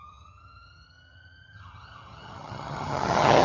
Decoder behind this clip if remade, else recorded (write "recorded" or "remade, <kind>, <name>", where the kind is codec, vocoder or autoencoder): remade, vocoder, HiFi-GAN